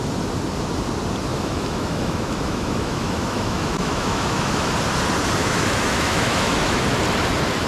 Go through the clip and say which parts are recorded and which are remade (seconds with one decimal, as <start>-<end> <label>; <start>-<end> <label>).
0.0-1.3 recorded; 1.3-4.7 remade; 4.7-5.4 recorded; 5.4-6.8 remade; 6.8-7.7 recorded